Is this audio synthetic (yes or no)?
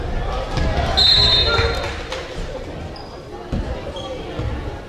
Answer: no